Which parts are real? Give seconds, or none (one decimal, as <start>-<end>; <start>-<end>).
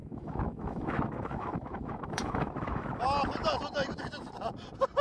3.0-5.0